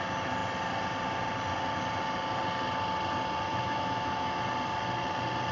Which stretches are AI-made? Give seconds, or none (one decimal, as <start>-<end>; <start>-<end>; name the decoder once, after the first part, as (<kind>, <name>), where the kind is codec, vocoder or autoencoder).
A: 3.5-4.4 (autoencoder, DAC-VAE)